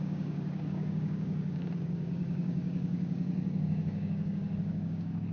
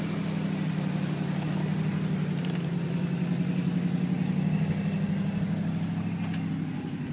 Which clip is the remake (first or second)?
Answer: first